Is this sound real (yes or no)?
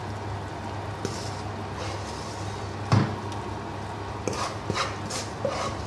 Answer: yes